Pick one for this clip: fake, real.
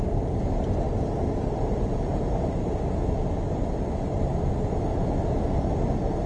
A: real